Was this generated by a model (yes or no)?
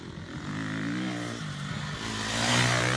no